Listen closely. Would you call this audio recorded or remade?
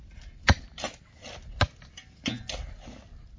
recorded